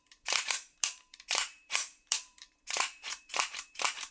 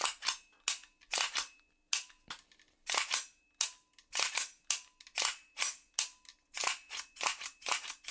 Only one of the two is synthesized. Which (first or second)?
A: first